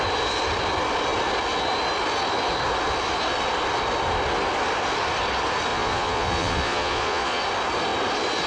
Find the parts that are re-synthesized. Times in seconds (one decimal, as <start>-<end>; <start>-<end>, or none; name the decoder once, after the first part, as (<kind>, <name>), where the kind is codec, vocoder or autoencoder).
5.7-7.4 (vocoder, Vocos)